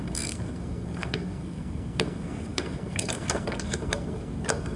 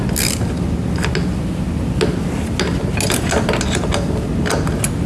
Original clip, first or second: second